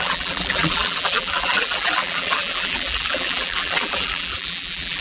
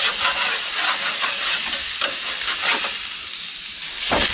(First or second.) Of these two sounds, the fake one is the first